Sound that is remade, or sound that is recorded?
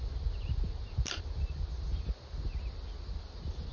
recorded